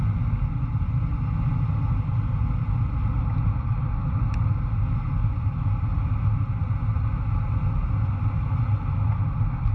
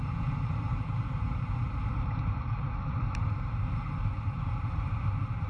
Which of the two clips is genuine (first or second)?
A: first